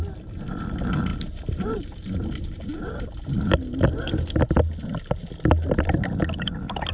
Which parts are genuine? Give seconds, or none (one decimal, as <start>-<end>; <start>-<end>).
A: 0.0-1.1; 2.2-6.9